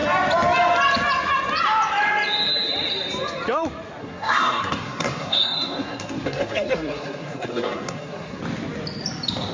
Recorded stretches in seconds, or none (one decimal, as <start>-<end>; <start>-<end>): 0.0-4.0; 8.4-9.5